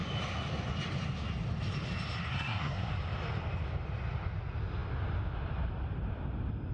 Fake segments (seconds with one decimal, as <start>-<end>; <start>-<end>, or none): 2.3-2.9